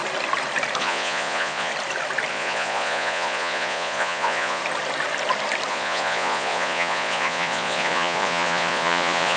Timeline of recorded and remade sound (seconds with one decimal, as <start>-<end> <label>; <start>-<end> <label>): 0.0-0.8 recorded; 0.8-1.7 remade; 1.7-2.3 recorded; 2.3-4.6 remade; 4.6-5.7 recorded; 5.7-9.4 remade